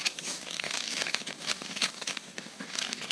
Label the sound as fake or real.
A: fake